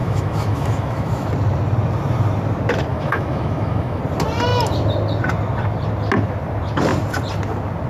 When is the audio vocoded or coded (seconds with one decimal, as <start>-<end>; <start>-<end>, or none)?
0.0-1.3; 2.9-4.0